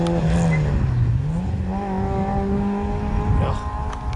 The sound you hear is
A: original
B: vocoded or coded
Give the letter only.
A